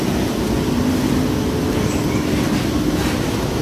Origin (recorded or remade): recorded